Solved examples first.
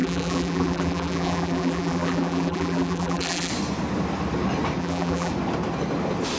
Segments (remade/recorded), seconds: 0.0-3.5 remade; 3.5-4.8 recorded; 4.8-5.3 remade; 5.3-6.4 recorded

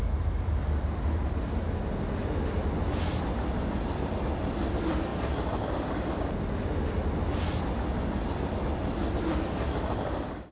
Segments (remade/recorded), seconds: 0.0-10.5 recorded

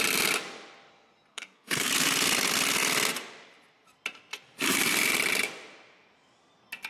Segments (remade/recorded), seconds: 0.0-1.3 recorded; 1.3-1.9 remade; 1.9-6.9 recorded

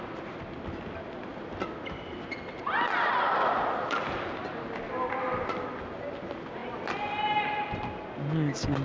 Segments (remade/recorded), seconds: 0.0-8.8 recorded

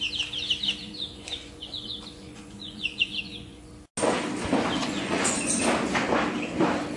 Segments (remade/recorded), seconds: 0.0-0.8 recorded; 0.8-3.7 remade; 3.7-4.8 recorded; 4.8-5.6 remade; 5.6-7.0 recorded